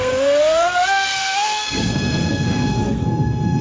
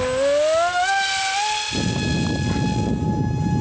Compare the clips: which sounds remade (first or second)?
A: first